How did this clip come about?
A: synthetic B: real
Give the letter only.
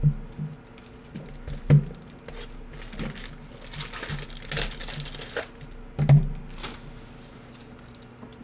B